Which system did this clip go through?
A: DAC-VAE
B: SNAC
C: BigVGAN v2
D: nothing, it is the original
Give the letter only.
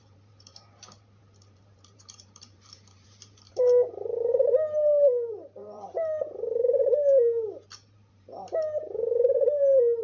C